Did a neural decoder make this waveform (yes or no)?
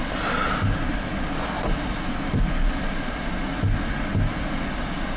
no